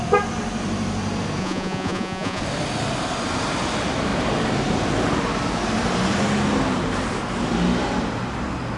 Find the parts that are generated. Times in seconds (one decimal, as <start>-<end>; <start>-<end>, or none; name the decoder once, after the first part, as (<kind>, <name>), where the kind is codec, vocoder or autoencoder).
1.4-2.4 (vocoder, Vocos)